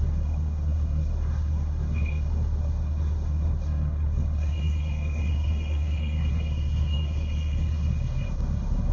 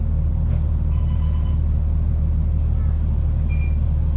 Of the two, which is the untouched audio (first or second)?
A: second